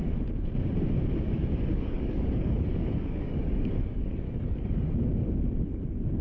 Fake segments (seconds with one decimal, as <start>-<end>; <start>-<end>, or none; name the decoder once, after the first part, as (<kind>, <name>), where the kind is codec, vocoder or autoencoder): 1.7-4.9 (codec, DAC)